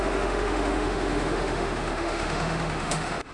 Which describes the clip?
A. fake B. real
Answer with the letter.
A